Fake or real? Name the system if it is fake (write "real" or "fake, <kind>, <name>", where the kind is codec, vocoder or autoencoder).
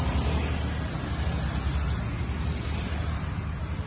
real